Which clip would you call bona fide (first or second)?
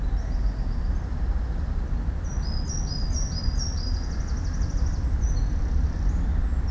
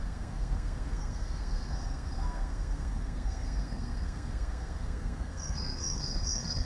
first